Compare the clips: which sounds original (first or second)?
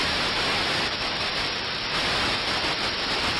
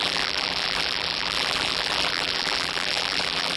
first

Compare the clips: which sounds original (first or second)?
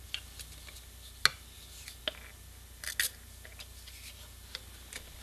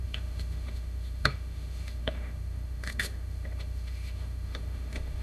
first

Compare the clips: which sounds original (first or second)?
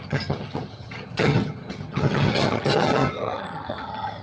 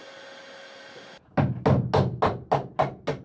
second